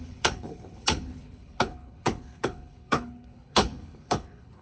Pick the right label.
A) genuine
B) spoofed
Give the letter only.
B